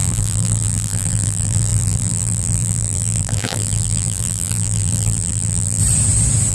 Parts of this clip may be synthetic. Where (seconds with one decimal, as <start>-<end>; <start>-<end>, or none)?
0.0-5.8